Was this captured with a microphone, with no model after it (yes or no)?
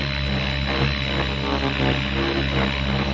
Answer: yes